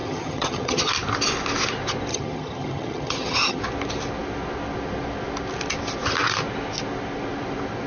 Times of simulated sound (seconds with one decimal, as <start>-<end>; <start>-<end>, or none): 0.0-0.9; 2.1-3.6